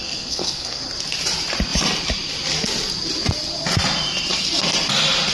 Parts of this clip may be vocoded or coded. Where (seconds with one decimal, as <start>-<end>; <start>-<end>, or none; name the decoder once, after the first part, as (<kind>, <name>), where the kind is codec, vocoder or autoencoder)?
0.0-0.8 (codec, SNAC)